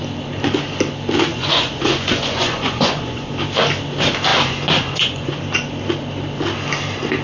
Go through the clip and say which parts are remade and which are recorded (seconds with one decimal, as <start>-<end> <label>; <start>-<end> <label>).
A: 0.0-1.3 recorded; 1.3-3.3 remade; 3.3-4.3 recorded; 4.3-5.4 remade; 5.4-7.2 recorded